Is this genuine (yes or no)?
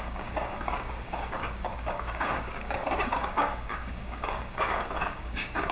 no